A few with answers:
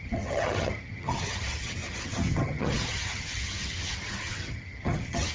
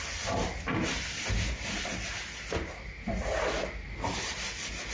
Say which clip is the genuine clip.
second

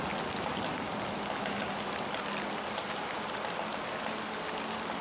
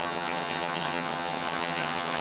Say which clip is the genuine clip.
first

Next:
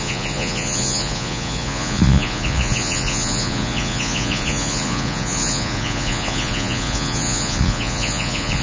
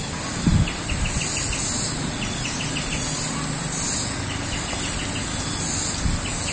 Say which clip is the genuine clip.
second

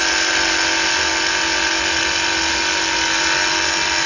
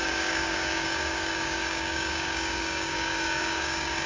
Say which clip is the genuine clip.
first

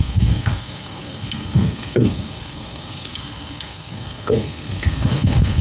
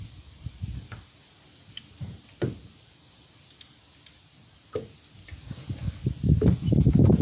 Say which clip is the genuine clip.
second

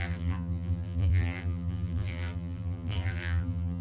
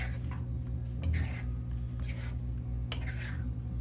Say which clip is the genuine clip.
second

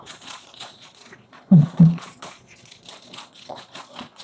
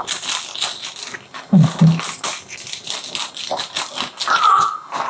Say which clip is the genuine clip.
second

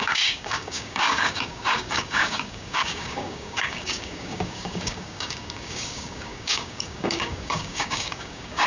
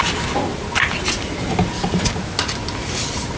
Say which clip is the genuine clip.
second